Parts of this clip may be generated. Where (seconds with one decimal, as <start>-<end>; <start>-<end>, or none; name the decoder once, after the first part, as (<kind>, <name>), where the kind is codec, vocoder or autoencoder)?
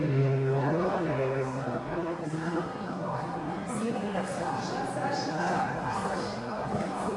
0.0-4.7 (codec, SNAC); 5.3-7.2